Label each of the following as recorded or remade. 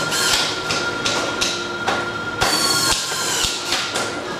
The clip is recorded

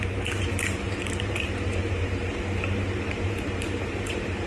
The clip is remade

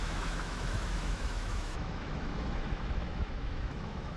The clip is remade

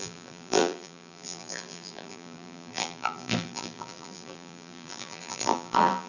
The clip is remade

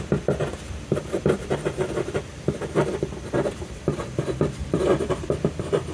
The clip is remade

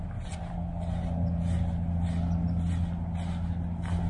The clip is recorded